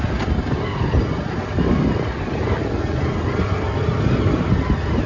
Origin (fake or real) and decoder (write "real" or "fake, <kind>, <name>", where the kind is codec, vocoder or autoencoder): real